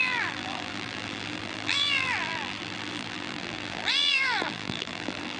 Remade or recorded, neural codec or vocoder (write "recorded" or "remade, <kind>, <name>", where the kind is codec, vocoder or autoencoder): remade, vocoder, BigVGAN v2